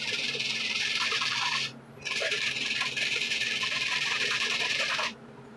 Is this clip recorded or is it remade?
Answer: remade